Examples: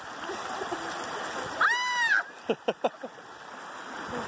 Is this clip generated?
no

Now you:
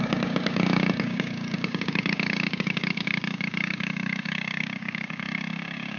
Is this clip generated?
yes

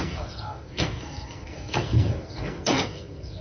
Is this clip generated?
yes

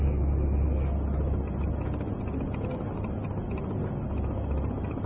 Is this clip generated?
no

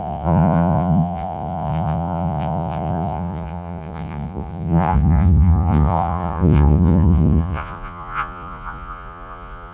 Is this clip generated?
yes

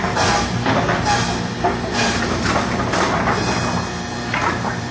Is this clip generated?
no